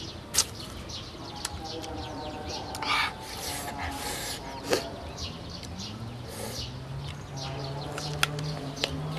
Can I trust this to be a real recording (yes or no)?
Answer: yes